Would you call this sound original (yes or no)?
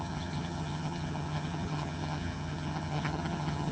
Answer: no